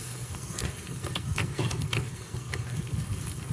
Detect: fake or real fake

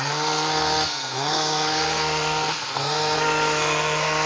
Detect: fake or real fake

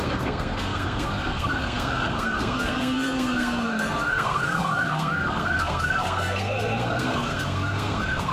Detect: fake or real fake